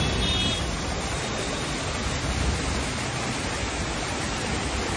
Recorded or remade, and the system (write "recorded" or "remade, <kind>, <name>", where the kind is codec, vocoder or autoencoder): recorded